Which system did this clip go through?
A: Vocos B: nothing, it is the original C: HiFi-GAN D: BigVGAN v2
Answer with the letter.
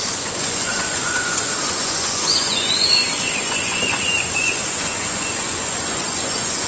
A